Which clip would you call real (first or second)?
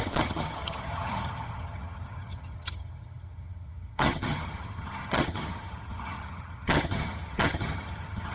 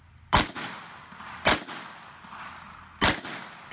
second